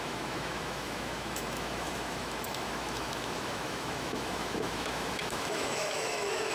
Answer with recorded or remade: remade